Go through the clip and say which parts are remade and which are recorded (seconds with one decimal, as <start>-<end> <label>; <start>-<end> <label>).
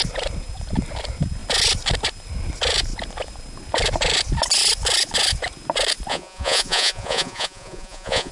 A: 0.0-6.1 recorded; 6.1-8.3 remade